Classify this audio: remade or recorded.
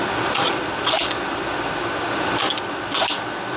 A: remade